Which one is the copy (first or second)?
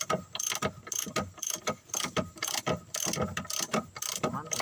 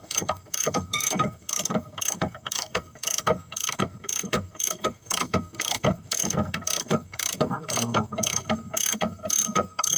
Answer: second